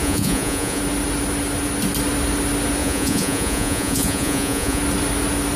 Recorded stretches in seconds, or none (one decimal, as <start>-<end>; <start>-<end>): 0.8-2.8; 4.8-5.6